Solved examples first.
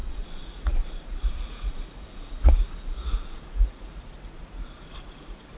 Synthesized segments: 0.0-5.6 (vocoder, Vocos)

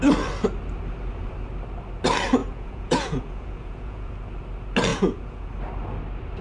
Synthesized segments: 2.4-4.1 (vocoder, Vocos); 4.9-5.5

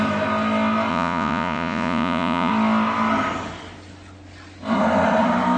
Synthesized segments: 0.9-2.5 (vocoder, Vocos)